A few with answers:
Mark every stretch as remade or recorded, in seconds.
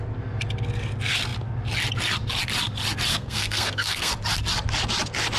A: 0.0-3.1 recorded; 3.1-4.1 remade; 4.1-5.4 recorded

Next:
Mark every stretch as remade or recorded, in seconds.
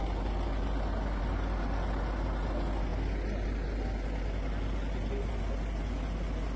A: 0.0-6.6 recorded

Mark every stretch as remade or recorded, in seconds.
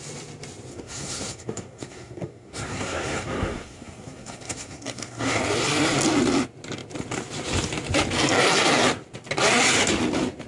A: 0.0-0.7 recorded; 0.7-5.4 remade; 5.4-10.5 recorded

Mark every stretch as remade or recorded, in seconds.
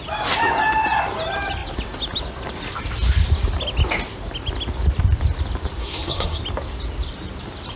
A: 0.0-5.8 recorded; 5.8-6.4 remade; 6.4-7.8 recorded